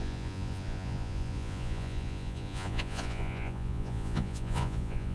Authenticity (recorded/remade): remade